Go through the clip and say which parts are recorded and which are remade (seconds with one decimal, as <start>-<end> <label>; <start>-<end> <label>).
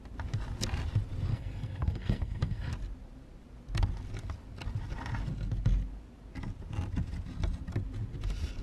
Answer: 0.0-1.3 recorded; 1.3-2.7 remade; 2.7-8.6 recorded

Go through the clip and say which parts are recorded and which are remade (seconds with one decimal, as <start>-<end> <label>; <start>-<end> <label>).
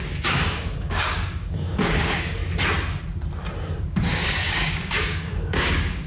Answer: 0.0-2.4 remade; 2.4-3.8 recorded; 3.8-6.1 remade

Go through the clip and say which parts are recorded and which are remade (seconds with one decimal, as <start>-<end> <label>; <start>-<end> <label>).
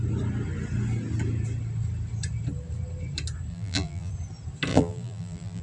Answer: 0.0-3.5 recorded; 3.5-4.1 remade; 4.1-4.7 recorded; 4.7-5.6 remade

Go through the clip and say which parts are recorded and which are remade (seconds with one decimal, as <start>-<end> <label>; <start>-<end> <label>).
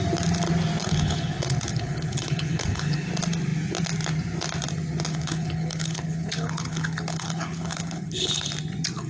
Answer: 0.0-0.8 recorded; 0.8-3.1 remade; 3.1-5.1 recorded; 5.1-8.5 remade; 8.5-9.1 recorded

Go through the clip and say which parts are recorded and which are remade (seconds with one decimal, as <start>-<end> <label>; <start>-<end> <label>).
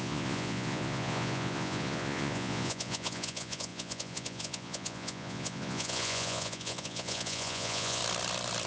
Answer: 0.0-8.0 remade; 8.0-8.7 recorded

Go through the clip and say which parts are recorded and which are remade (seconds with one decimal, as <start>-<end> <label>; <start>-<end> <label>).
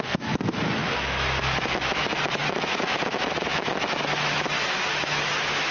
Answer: 0.0-5.7 remade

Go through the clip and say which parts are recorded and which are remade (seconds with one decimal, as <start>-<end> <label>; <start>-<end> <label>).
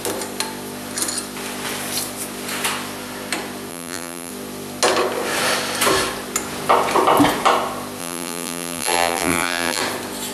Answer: 0.0-3.7 recorded; 3.7-4.3 remade; 4.3-8.0 recorded; 8.0-9.8 remade; 9.8-10.3 recorded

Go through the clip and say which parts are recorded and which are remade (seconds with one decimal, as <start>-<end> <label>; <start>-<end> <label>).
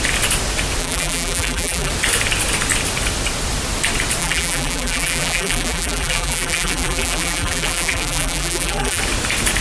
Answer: 0.0-0.8 recorded; 0.8-1.9 remade; 1.9-4.2 recorded; 4.2-9.0 remade; 9.0-9.6 recorded